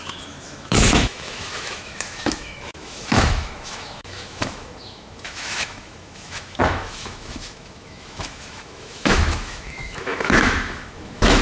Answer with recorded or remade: remade